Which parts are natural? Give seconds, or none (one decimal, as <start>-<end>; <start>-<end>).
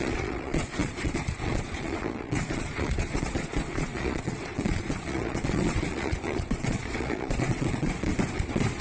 8.1-8.8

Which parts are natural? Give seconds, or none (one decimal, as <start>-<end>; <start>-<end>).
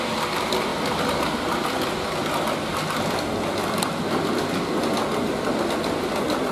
0.0-6.5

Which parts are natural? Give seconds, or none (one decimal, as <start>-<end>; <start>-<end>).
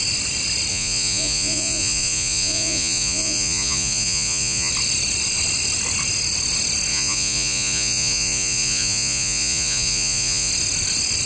0.0-0.7; 4.7-6.9; 10.5-11.3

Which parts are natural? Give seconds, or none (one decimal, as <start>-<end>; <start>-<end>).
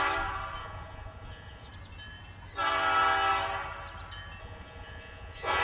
0.0-0.6; 1.7-4.4